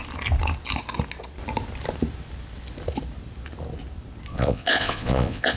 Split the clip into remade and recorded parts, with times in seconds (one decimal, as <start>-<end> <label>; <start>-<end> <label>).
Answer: 0.0-4.3 recorded; 4.3-5.6 remade